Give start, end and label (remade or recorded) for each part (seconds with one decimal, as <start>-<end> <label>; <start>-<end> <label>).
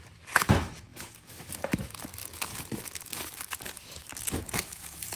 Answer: 0.0-5.2 remade